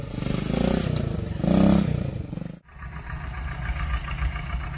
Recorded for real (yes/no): yes